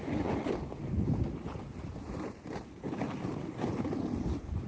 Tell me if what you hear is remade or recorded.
recorded